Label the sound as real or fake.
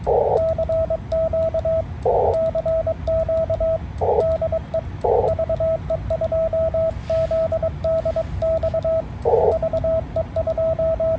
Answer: real